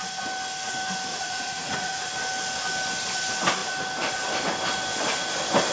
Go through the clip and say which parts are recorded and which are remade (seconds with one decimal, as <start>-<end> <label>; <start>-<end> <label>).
0.0-1.1 recorded; 1.1-2.1 remade; 2.1-5.7 recorded